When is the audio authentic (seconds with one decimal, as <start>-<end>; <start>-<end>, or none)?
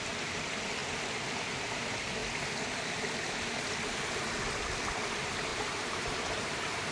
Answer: 0.0-5.5